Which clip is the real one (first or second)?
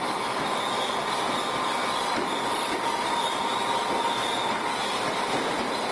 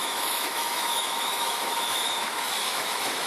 first